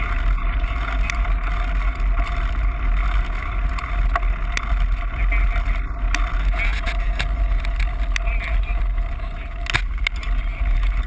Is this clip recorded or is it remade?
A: recorded